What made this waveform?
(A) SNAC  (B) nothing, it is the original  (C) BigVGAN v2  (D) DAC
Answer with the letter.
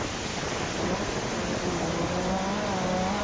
B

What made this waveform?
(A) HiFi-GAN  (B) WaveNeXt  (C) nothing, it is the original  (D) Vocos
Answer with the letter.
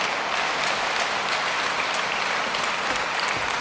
C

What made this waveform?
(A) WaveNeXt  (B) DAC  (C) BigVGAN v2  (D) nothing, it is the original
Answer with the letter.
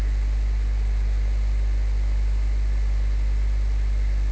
D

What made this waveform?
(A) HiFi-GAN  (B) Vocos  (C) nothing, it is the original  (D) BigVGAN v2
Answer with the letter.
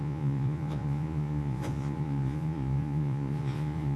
B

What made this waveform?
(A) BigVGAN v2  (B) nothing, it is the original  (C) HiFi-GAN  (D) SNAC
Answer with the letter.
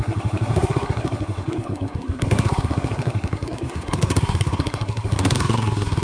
D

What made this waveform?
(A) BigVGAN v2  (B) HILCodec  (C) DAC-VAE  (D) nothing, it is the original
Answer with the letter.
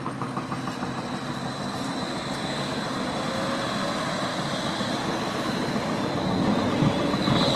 D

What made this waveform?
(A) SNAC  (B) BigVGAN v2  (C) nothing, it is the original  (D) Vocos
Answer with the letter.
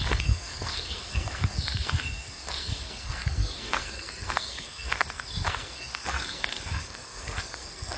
A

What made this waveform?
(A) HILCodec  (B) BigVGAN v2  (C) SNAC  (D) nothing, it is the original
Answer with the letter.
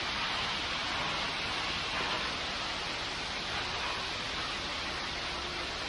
D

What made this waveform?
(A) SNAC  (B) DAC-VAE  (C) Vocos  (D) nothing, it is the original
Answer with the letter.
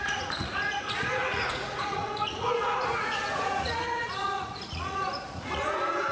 C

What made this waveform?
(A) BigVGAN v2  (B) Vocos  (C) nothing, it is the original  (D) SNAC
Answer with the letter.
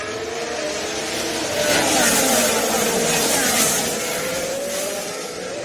A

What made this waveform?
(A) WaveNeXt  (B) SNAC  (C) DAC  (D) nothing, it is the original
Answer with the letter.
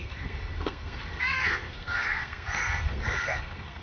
B